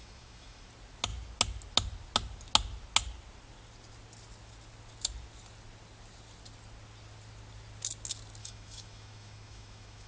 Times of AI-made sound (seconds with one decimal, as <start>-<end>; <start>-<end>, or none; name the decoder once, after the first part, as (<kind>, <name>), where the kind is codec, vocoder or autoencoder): 0.0-0.7 (autoencoder, DAC-VAE); 8.4-10.1